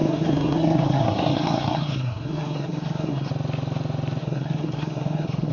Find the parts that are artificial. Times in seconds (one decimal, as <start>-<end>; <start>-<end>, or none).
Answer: 0.0-3.3; 4.2-5.5